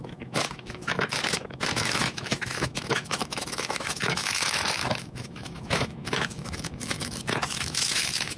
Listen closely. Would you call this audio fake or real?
fake